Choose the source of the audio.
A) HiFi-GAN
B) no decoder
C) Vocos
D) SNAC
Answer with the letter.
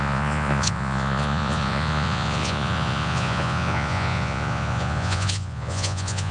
C